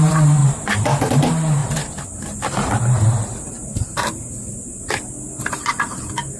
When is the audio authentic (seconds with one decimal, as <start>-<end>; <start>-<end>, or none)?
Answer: 0.4-1.1; 4.4-5.5